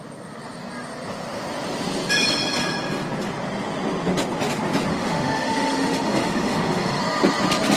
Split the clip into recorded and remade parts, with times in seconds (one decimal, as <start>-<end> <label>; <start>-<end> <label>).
0.0-4.9 recorded; 4.9-7.0 remade; 7.0-7.8 recorded